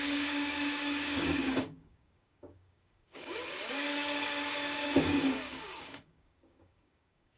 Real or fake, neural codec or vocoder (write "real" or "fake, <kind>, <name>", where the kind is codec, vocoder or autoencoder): fake, codec, DAC